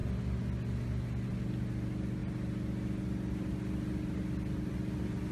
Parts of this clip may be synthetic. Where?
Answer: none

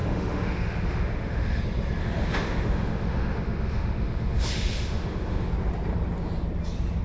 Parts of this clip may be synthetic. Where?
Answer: 0.0-1.6 (autoencoder, DAC-VAE); 2.0-5.5

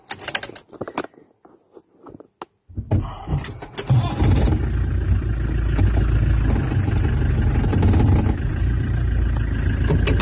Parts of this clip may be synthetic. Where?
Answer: none

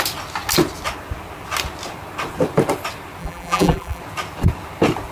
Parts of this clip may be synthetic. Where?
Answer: 3.2-4.0 (vocoder, BigVGAN v2)

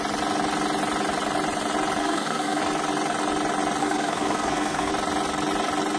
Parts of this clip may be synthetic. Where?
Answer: 2.0-2.6 (codec, SNAC); 3.8-4.9

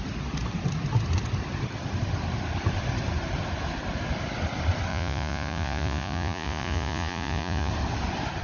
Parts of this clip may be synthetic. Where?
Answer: 4.9-7.7 (vocoder, Vocos)